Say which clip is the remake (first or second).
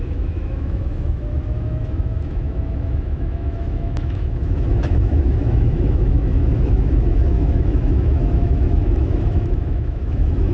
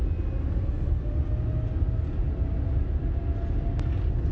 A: first